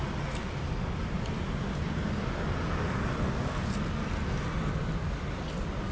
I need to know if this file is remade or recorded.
recorded